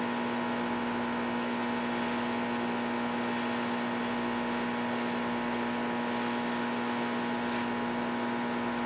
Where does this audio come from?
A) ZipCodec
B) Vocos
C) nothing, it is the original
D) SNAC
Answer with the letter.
C